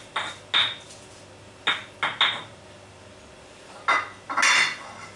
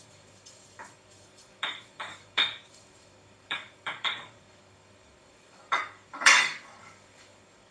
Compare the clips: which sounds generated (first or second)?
second